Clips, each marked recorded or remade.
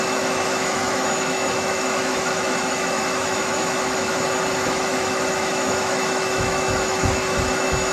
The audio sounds remade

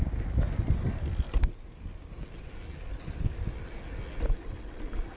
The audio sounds recorded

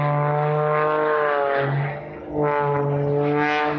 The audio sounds recorded